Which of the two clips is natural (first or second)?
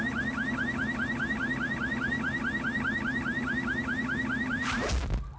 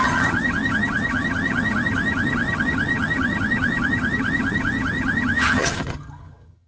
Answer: first